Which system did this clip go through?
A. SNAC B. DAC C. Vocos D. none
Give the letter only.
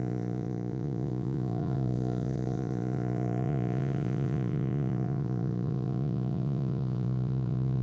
C